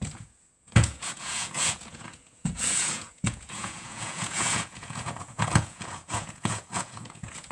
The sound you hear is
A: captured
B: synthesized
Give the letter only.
B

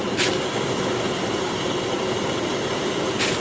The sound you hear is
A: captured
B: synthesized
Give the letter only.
A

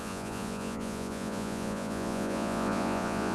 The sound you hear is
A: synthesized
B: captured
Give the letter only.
A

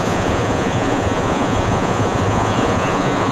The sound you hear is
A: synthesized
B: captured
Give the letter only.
A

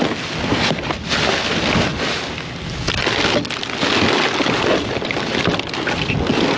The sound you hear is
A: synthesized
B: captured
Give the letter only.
B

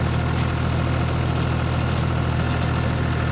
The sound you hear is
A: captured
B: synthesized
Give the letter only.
A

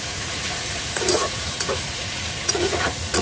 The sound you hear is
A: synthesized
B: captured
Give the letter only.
A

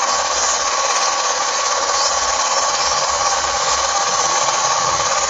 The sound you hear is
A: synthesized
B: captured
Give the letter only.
A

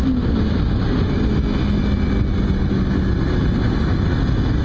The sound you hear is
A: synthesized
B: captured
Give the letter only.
B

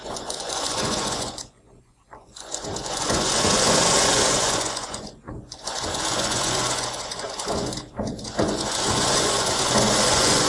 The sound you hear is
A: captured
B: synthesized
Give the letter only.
B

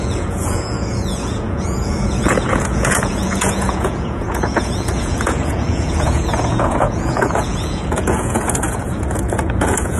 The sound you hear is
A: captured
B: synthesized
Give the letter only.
B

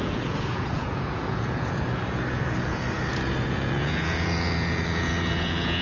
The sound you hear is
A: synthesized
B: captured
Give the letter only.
A